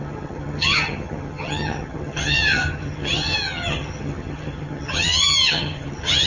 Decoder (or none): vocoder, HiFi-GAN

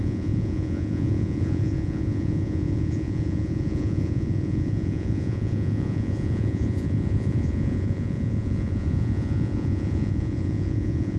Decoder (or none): vocoder, Vocos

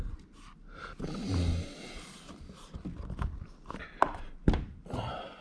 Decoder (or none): none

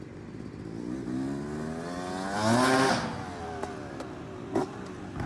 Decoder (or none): none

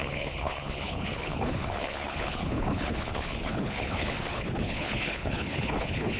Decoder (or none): codec, HILCodec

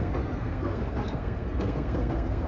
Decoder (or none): codec, SNAC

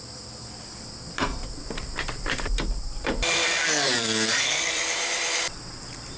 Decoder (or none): vocoder, BigVGAN v2